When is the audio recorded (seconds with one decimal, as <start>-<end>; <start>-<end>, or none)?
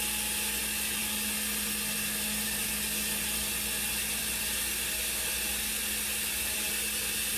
0.0-7.4